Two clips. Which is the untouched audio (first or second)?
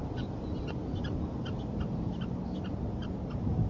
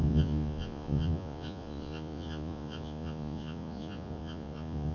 first